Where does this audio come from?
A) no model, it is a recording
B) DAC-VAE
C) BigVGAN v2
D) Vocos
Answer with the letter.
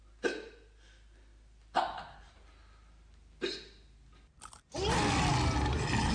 A